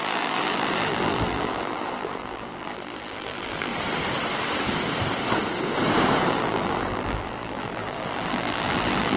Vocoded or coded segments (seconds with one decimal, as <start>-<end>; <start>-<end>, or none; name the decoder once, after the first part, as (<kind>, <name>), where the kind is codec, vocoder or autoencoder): 0.0-3.7 (vocoder, BigVGAN v2); 6.3-9.2